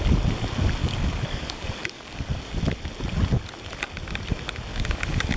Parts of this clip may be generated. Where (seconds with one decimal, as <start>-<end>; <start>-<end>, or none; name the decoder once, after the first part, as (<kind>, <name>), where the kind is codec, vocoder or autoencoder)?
0.8-2.4 (codec, DAC); 4.7-5.4